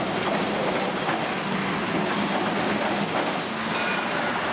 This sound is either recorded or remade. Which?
recorded